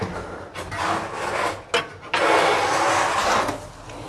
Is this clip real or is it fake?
real